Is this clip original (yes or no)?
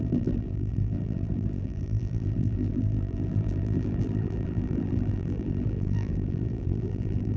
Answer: no